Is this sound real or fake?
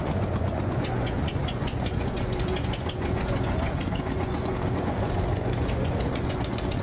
fake